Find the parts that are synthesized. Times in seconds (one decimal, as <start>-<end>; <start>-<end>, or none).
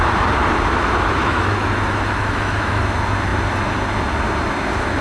1.2-2.8